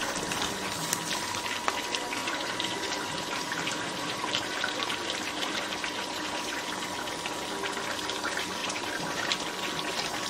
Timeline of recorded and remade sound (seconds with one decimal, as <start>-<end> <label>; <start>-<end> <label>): 0.0-2.2 recorded; 2.2-6.7 remade; 6.7-8.6 recorded; 8.6-9.3 remade; 9.3-10.3 recorded